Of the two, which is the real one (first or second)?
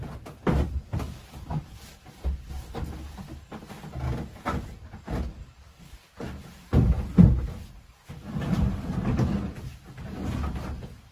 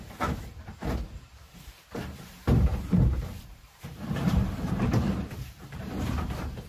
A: first